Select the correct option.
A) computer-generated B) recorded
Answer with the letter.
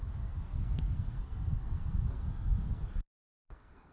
A